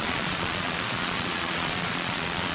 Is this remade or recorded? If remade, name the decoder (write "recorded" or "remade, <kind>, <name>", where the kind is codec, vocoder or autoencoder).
remade, vocoder, Vocos